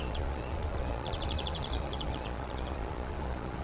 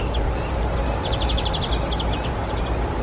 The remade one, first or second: first